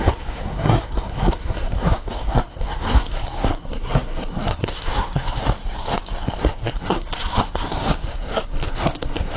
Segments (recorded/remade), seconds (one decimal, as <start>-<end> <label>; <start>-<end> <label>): 0.0-5.4 remade; 5.4-6.4 recorded; 6.4-9.4 remade